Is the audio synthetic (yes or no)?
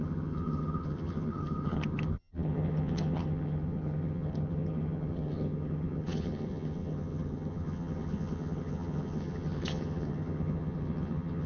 yes